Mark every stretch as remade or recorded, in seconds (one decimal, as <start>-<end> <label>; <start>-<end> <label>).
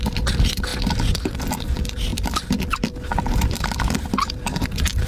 0.0-2.1 recorded; 2.1-4.5 remade; 4.5-5.1 recorded